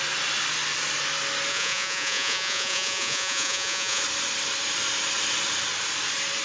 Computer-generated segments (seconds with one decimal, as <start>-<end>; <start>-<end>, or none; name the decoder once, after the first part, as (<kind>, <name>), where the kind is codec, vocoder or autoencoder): 1.5-4.0 (vocoder, Vocos)